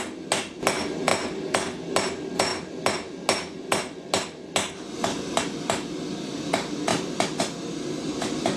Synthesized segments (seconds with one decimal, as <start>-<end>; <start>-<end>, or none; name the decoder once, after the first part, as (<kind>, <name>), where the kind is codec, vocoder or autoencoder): 6.9-7.4 (vocoder, BigVGAN v2)